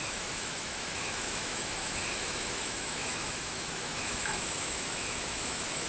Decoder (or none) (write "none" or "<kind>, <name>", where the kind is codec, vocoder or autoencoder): autoencoder, DAC-VAE